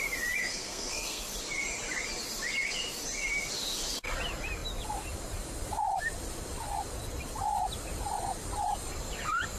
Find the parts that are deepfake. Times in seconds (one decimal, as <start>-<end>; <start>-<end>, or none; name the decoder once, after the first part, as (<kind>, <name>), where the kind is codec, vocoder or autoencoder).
0.5-1.2 (codec, SNAC)